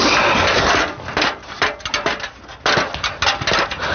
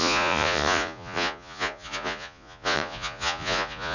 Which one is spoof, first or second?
second